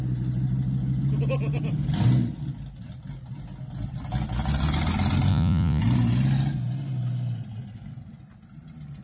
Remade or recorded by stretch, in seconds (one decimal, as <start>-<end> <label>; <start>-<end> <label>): 0.0-5.3 recorded; 5.3-5.8 remade; 5.8-9.0 recorded

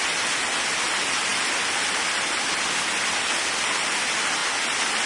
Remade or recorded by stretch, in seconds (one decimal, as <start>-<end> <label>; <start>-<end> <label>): 0.0-5.1 recorded

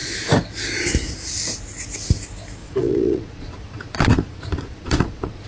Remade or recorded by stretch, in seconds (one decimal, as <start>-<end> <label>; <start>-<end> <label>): 0.0-2.6 recorded; 2.6-5.5 remade

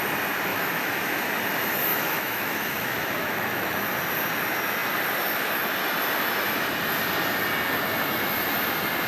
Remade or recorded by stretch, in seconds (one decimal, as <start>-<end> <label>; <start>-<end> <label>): 0.0-0.5 recorded; 0.5-1.2 remade; 1.2-1.9 recorded; 1.9-3.8 remade; 3.8-9.1 recorded

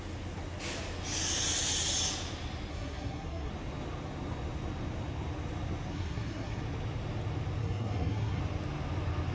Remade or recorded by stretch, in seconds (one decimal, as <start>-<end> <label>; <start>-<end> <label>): 0.0-2.7 recorded; 2.7-3.5 remade; 3.5-5.9 recorded; 5.9-6.6 remade; 6.6-7.6 recorded; 7.6-8.4 remade; 8.4-9.3 recorded

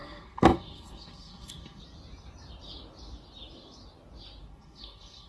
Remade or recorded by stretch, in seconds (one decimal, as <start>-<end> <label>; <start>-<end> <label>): 0.0-1.8 remade; 1.8-4.5 recorded; 4.5-5.3 remade

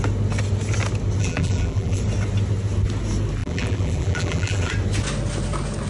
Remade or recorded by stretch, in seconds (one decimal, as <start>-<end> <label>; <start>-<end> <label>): 0.0-1.2 recorded; 1.2-2.0 remade; 2.0-3.4 recorded; 3.4-4.7 remade; 4.7-5.9 recorded